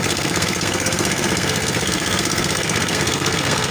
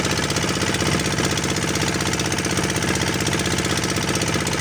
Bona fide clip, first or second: second